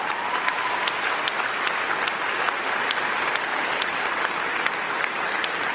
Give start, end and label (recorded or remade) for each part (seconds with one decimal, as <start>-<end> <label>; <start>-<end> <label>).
0.0-5.7 recorded